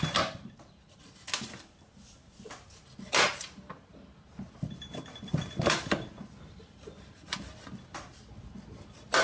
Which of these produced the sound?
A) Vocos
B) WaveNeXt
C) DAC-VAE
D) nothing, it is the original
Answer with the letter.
D